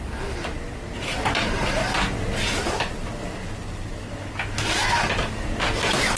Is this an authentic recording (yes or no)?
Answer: yes